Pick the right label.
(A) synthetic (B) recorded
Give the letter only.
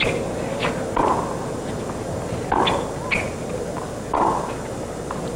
B